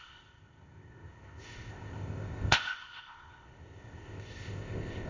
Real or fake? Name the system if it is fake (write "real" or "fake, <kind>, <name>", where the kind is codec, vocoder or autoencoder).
fake, codec, ZipCodec